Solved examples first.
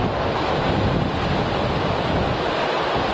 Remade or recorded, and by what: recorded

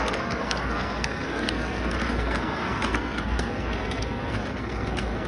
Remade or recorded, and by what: remade, codec, SNAC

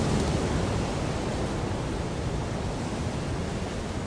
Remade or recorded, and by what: recorded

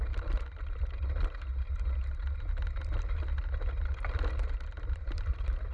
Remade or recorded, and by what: recorded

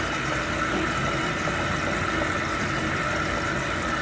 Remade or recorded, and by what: recorded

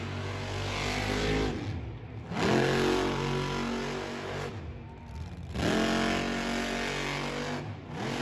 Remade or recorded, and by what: recorded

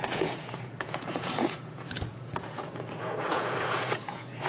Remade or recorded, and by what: remade, vocoder, Vocos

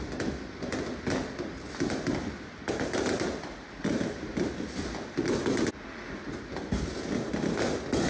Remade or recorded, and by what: recorded